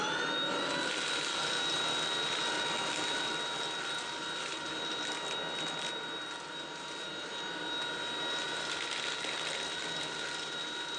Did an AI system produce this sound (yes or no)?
no